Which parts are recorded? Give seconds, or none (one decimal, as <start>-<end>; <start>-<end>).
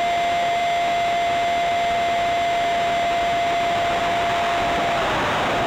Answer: 0.0-5.7